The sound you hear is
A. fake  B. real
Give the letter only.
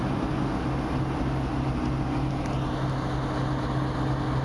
B